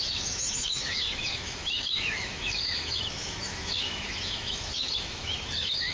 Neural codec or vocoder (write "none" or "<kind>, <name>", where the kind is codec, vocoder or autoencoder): autoencoder, DAC-VAE